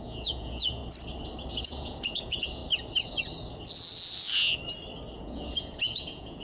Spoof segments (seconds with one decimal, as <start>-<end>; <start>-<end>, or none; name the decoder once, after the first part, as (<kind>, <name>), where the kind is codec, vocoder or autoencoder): 0.0-0.8 (vocoder, Vocos); 1.5-2.6; 5.2-6.4